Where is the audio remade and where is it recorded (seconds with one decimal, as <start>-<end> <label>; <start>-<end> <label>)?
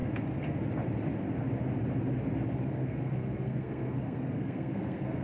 0.0-2.7 recorded; 2.7-5.2 remade